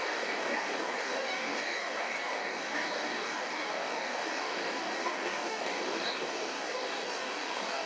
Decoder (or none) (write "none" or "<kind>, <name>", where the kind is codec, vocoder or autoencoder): codec, DAC